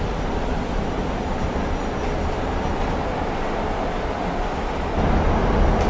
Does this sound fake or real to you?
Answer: real